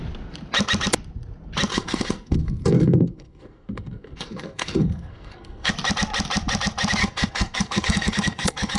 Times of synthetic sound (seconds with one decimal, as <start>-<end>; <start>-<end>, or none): 1.7-5.7; 7.0-8.8